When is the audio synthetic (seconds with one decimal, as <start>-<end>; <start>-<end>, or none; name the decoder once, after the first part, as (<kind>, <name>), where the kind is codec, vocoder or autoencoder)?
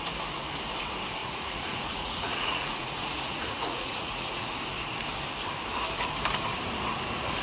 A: 1.2-4.5 (vocoder, Vocos)